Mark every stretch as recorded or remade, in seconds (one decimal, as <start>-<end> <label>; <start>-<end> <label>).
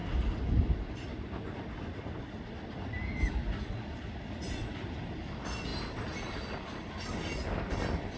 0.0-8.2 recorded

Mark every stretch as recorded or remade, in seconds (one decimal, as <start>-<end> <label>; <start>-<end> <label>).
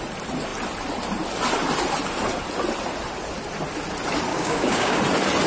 0.0-4.3 recorded; 4.3-5.0 remade; 5.0-5.5 recorded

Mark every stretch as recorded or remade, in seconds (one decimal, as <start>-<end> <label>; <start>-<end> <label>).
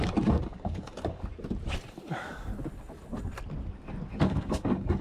0.0-1.3 remade; 1.3-1.9 recorded; 1.9-2.5 remade; 2.5-4.1 recorded; 4.1-5.0 remade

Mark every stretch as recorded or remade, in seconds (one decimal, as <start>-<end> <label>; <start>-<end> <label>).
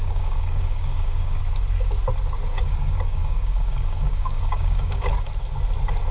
0.0-1.4 remade; 1.4-2.5 recorded; 2.5-5.1 remade; 5.1-6.1 recorded